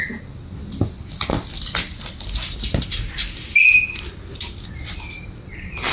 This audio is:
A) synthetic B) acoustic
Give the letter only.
B